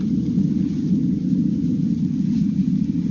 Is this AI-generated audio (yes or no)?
no